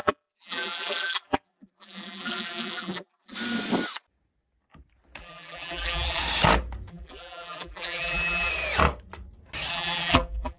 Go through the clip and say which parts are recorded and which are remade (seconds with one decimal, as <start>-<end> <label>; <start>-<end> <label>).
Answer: 0.0-3.3 remade; 3.3-5.2 recorded; 5.2-6.2 remade; 6.2-6.9 recorded; 6.9-8.5 remade; 8.5-9.7 recorded; 9.7-10.6 remade